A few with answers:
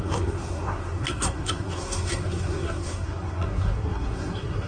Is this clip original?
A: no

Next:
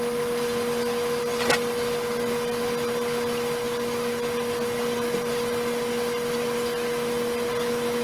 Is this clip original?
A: yes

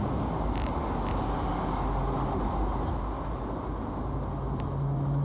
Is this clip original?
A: yes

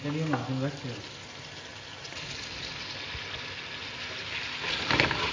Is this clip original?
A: yes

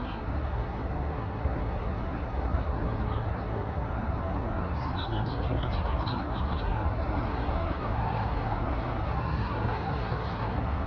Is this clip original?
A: no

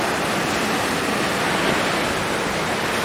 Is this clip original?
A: yes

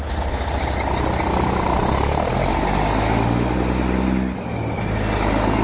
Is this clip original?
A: yes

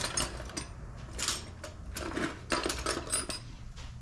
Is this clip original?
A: yes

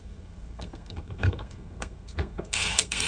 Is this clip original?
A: no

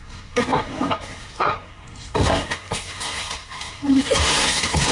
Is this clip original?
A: no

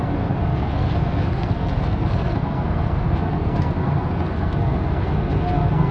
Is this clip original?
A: no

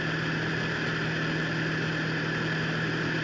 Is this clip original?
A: yes